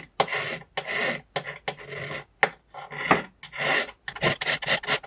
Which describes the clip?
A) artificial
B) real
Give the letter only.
B